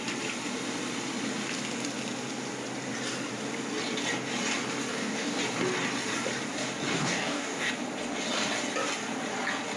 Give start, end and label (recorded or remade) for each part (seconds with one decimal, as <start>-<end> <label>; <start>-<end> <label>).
0.0-4.9 recorded; 4.9-5.4 remade; 5.4-6.9 recorded; 6.9-7.7 remade; 7.7-9.8 recorded